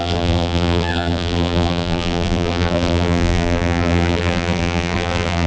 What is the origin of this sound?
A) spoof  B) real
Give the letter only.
A